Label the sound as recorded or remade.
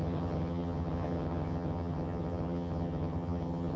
remade